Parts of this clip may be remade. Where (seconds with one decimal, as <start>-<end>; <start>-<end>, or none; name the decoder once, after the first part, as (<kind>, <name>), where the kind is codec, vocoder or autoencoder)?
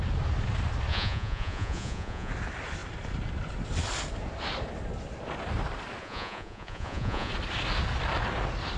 0.9-2.3 (vocoder, Vocos); 6.0-7.3